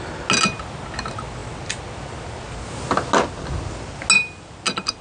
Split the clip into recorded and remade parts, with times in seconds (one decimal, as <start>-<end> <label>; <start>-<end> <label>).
0.0-5.0 recorded

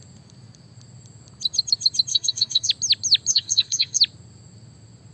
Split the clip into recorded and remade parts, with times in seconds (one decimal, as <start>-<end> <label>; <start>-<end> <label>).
0.0-2.1 recorded; 2.1-2.7 remade; 2.7-3.3 recorded; 3.3-4.0 remade; 4.0-5.1 recorded

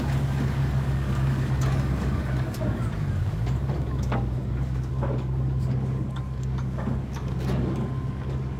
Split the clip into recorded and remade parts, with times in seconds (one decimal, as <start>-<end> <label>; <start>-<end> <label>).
0.0-8.6 remade

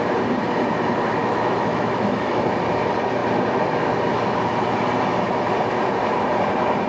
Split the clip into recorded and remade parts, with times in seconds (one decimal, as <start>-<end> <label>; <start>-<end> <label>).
0.0-1.2 recorded; 1.2-2.4 remade; 2.4-6.9 recorded

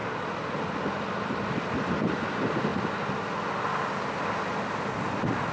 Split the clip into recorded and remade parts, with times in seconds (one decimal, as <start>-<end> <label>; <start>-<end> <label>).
0.0-5.5 recorded

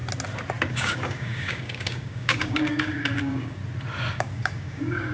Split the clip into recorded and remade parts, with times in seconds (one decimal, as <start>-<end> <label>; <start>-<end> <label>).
0.0-0.7 recorded; 0.7-3.6 remade; 3.6-4.1 recorded; 4.1-5.1 remade

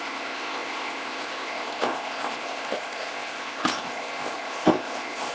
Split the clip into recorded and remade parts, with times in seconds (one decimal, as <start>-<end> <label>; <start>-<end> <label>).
0.0-5.3 remade

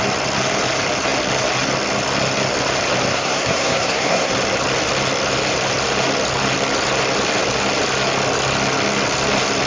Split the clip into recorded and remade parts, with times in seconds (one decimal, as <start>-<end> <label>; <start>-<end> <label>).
0.0-3.1 recorded; 3.1-4.3 remade; 4.3-9.7 recorded